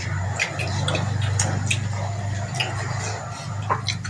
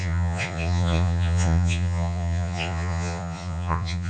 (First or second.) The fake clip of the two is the second